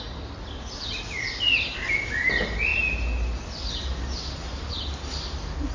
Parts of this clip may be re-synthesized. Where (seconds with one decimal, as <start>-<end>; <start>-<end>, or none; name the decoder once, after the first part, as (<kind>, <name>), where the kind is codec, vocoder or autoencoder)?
none